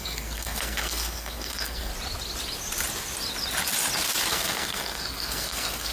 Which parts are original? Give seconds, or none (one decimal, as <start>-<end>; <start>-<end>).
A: 1.9-4.3